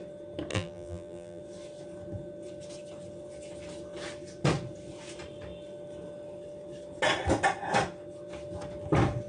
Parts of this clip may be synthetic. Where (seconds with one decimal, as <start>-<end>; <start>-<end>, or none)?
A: 0.5-1.4

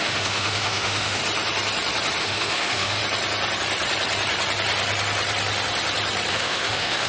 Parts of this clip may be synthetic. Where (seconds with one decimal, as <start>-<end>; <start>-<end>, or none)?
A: 0.0-1.2; 2.2-3.0; 6.3-7.1

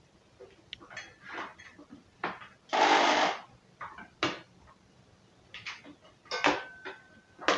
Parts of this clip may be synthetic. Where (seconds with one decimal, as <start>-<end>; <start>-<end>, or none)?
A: none

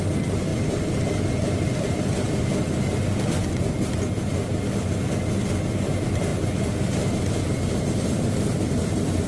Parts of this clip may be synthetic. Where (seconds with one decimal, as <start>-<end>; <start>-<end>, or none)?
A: 6.3-7.1